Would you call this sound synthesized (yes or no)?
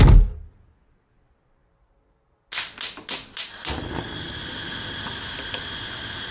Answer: no